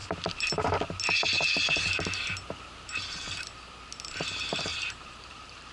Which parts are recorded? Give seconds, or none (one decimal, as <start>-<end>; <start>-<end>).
0.0-4.7